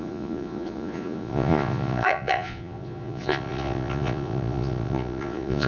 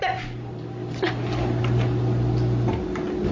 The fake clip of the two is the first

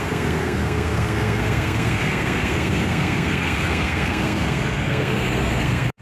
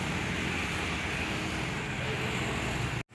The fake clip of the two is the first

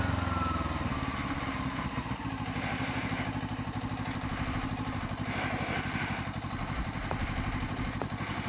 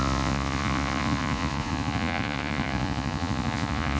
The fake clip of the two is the second